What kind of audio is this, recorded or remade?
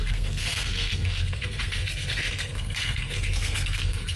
remade